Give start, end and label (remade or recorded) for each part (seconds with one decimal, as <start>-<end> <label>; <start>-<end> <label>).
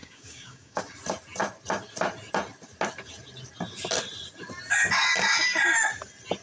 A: 0.0-0.8 remade; 0.8-6.4 recorded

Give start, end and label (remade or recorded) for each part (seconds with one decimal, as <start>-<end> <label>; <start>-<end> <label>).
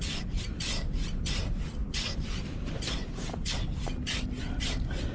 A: 0.0-5.1 recorded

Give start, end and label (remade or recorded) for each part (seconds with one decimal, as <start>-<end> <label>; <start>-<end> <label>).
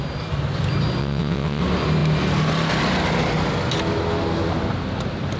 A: 0.0-1.0 recorded; 1.0-1.6 remade; 1.6-5.4 recorded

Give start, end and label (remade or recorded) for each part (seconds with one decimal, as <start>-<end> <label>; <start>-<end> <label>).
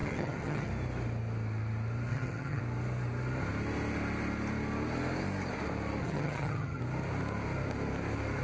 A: 0.0-0.7 remade; 0.7-2.1 recorded; 2.1-2.6 remade; 2.6-6.0 recorded; 6.0-6.8 remade; 6.8-8.4 recorded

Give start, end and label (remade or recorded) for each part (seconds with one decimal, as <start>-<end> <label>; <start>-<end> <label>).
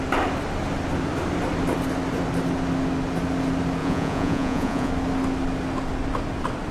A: 0.0-3.8 recorded; 3.8-4.9 remade; 4.9-6.7 recorded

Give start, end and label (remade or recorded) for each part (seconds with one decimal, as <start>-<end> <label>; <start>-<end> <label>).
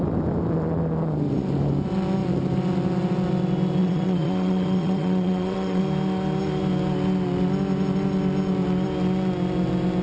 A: 0.0-3.8 recorded; 3.8-5.8 remade; 5.8-10.0 recorded